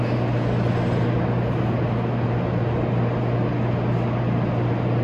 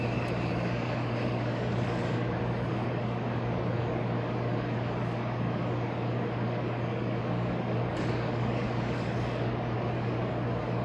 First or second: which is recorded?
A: first